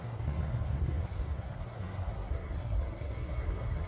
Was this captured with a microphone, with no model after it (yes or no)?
no